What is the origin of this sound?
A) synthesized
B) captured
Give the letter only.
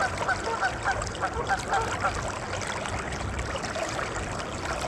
B